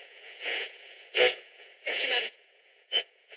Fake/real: fake